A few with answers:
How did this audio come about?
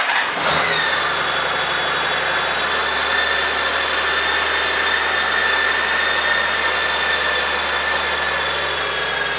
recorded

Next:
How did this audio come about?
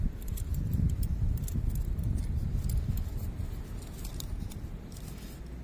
recorded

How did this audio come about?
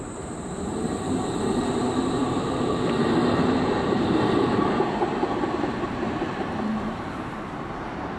remade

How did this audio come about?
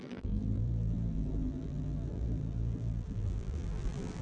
remade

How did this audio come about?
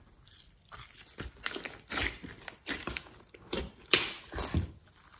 remade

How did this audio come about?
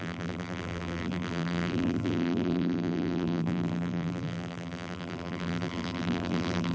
remade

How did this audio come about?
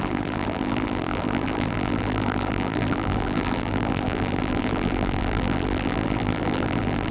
remade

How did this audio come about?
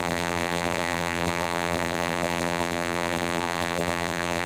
remade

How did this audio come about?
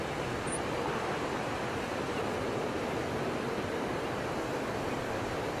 recorded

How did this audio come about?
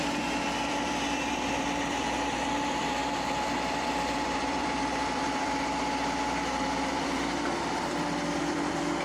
remade